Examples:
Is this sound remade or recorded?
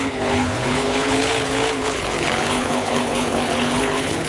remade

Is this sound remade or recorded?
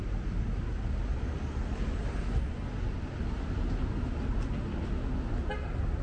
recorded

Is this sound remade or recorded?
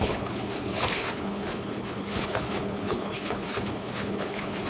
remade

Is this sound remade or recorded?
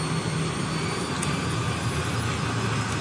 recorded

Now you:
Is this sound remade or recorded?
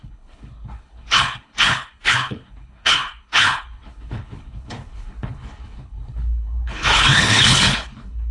remade